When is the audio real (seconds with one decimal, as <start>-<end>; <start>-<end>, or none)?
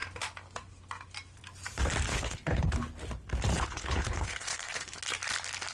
0.0-2.1; 2.7-3.5; 5.0-5.7